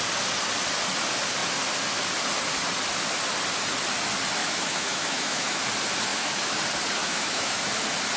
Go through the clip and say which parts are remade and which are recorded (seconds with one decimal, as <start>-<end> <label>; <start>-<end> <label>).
0.0-4.4 recorded; 4.4-5.6 remade; 5.6-6.1 recorded; 6.1-6.6 remade; 6.6-7.0 recorded; 7.0-7.6 remade; 7.6-8.2 recorded